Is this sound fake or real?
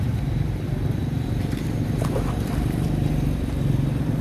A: fake